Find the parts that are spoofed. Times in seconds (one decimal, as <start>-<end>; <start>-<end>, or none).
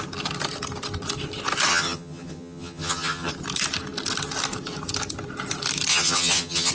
1.7-3.3; 5.9-6.7